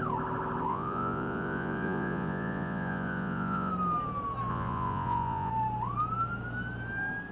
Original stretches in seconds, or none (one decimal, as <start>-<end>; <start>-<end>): 0.0-0.7; 3.7-4.5; 5.5-7.3

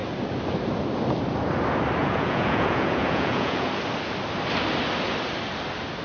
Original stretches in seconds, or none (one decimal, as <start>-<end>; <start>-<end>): 0.0-2.0; 3.7-6.0

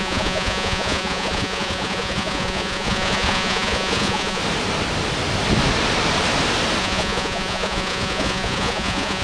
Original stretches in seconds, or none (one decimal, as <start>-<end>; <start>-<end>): 4.4-6.8

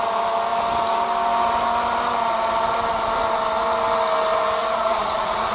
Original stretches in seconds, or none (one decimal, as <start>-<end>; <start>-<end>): 0.0-4.6

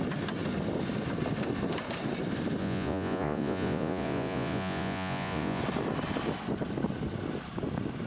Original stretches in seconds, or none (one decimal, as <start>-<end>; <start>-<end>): 0.0-2.6; 5.6-8.1

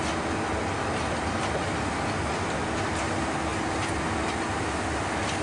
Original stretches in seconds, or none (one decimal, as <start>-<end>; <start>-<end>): 0.0-5.4